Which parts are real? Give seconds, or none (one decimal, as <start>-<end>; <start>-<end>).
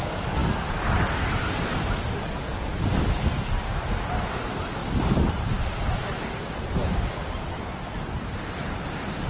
0.0-9.3